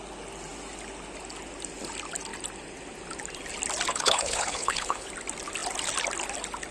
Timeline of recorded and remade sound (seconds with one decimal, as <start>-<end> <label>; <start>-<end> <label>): 0.0-3.9 recorded; 3.9-5.1 remade; 5.1-6.7 recorded